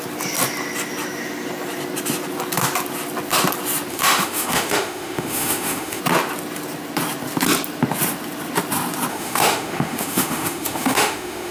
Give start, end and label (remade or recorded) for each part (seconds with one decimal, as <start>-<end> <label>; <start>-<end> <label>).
0.0-3.9 recorded; 3.9-6.0 remade; 6.0-9.1 recorded; 9.1-11.5 remade